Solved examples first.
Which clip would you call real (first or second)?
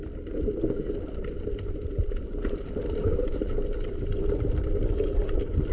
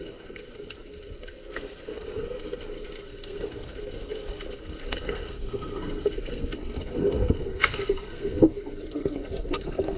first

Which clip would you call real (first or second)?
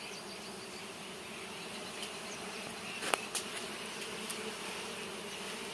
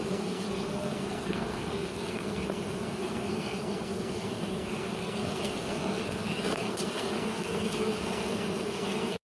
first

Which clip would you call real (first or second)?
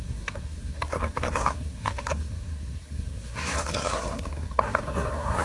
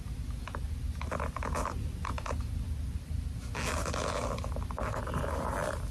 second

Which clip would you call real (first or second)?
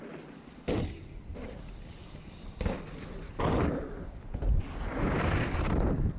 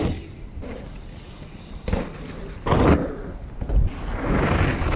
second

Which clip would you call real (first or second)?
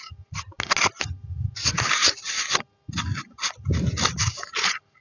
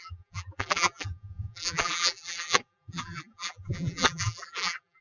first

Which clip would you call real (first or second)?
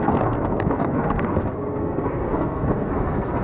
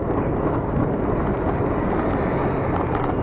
second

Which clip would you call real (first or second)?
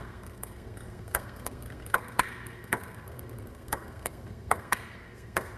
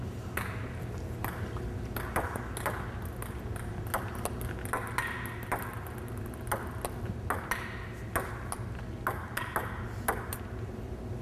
second